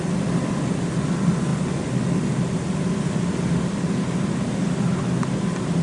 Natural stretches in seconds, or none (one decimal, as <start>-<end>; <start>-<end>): 0.0-5.8